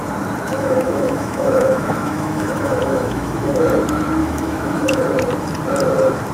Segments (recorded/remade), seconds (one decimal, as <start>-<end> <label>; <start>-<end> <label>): 0.0-0.5 recorded; 0.5-3.6 remade; 3.6-4.2 recorded; 4.2-5.0 remade; 5.0-6.3 recorded